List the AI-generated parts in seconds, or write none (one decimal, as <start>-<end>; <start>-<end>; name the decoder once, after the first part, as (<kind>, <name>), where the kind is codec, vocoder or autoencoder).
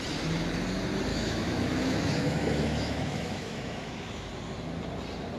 1.1-4.3 (autoencoder, DAC-VAE)